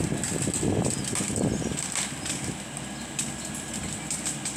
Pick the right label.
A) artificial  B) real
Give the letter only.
B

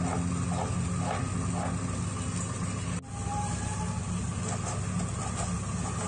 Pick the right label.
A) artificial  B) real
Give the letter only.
B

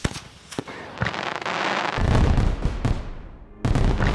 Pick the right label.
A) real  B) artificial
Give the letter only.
A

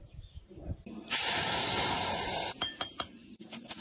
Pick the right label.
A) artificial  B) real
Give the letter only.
A